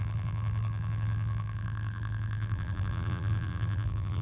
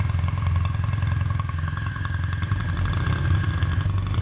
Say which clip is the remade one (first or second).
first